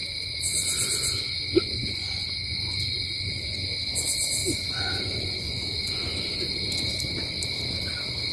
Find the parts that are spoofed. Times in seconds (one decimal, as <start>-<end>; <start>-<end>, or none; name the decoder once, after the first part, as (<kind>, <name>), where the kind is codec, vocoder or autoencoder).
0.0-3.7 (vocoder, Vocos); 4.4-6.8